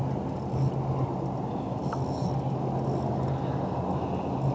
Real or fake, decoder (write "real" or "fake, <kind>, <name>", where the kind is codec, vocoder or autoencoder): real